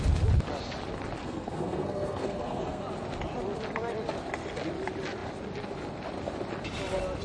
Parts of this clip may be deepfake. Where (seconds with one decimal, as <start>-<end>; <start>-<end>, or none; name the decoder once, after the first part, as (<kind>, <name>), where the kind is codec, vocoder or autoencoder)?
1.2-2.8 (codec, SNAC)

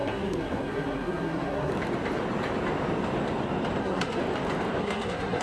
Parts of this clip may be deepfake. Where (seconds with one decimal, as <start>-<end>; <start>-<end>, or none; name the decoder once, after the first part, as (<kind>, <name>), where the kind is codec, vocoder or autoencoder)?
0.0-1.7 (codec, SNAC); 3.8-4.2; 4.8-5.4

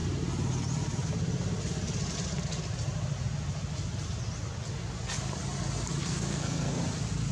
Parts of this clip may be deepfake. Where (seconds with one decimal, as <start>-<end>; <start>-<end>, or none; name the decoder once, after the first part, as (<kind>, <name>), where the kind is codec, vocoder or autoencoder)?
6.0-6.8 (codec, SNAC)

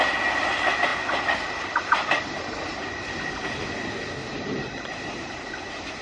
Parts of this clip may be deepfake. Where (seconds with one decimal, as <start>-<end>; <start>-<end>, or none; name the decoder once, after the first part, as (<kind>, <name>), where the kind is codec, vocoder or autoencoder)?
none

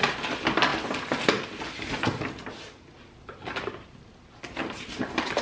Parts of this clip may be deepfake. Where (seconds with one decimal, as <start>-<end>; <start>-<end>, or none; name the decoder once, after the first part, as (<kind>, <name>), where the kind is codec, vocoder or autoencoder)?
none

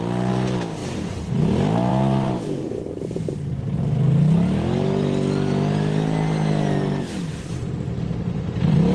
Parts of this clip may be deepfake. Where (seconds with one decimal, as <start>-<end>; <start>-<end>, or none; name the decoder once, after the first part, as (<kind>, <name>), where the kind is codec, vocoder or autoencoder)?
0.8-1.3 (vocoder, BigVGAN v2); 1.9-3.6

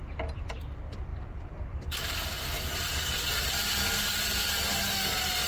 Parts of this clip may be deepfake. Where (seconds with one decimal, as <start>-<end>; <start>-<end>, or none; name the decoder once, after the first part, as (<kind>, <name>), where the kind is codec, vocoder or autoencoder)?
1.1-4.4 (vocoder, BigVGAN v2)